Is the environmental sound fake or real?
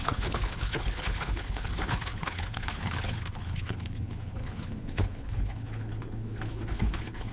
fake